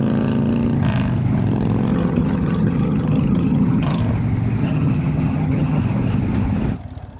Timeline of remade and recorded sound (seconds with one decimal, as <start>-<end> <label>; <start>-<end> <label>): 0.0-1.9 recorded; 1.9-4.0 remade; 4.0-4.6 recorded; 4.6-5.8 remade; 5.8-7.2 recorded